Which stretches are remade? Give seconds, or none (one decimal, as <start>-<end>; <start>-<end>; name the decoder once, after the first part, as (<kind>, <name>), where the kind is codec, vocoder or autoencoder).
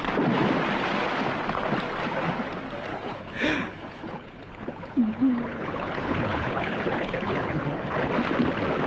2.9-8.1 (codec, HILCodec)